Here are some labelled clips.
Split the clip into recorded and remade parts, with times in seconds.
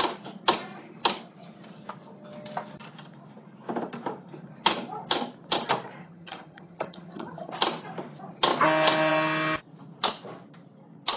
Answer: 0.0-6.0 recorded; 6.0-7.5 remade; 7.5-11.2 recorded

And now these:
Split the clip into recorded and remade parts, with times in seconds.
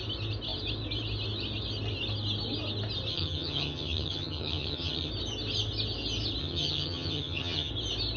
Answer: 0.0-3.1 recorded; 3.1-5.1 remade; 5.1-6.4 recorded; 6.4-7.7 remade; 7.7-8.2 recorded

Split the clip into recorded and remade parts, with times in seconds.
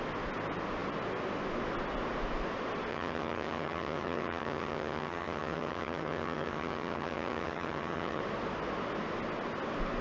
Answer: 0.0-2.9 recorded; 2.9-8.2 remade; 8.2-10.0 recorded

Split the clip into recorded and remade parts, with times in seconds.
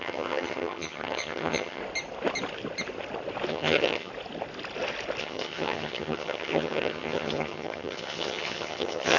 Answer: 0.0-1.8 remade; 1.8-3.5 recorded; 3.5-4.1 remade; 4.1-5.2 recorded; 5.2-9.2 remade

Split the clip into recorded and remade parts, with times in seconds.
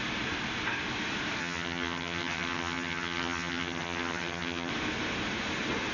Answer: 0.0-1.4 recorded; 1.4-4.7 remade; 4.7-5.9 recorded